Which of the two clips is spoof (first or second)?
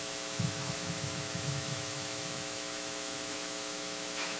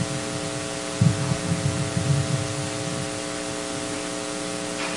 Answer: first